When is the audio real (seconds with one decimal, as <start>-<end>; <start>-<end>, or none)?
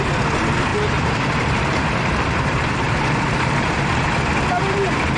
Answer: 0.0-0.7; 3.8-5.2